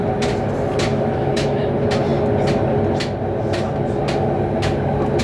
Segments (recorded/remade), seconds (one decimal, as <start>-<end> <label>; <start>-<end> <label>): 0.0-0.9 recorded; 0.9-1.7 remade; 1.7-5.2 recorded